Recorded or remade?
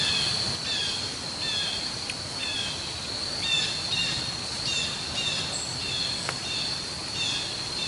recorded